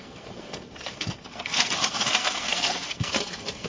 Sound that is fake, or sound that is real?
fake